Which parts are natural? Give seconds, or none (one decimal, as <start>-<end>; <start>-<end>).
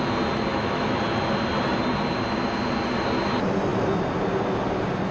0.0-0.5; 1.0-5.1